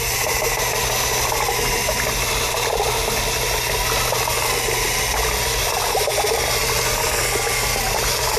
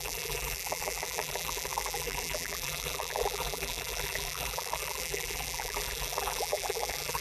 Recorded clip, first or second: first